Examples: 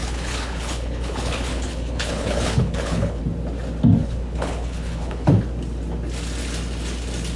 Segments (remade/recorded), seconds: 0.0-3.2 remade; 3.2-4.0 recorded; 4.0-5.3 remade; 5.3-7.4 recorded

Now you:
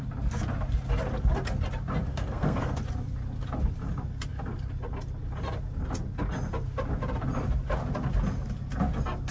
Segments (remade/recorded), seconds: 0.0-2.1 recorded; 2.1-2.8 remade; 2.8-9.3 recorded

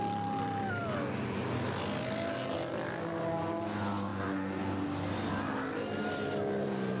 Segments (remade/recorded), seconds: 0.0-7.0 recorded

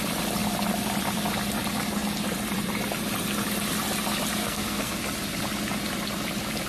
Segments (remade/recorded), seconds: 0.0-4.4 recorded; 4.4-5.0 remade; 5.0-6.7 recorded

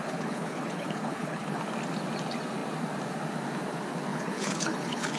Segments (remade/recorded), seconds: 0.0-1.6 remade; 1.6-4.1 recorded; 4.1-5.2 remade